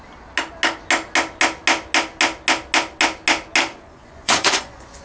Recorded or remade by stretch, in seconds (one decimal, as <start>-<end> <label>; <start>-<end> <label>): 0.0-3.7 recorded; 3.7-5.0 remade